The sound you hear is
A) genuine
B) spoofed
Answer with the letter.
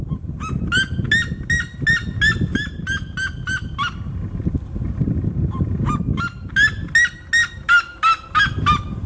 A